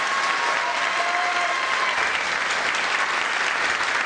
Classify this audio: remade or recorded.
recorded